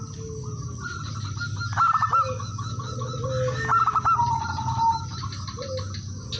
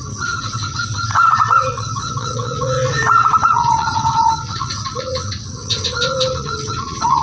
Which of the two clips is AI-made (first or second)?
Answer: second